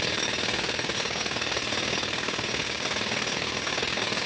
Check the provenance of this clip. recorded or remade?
remade